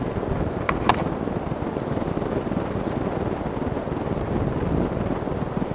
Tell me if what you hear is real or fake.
real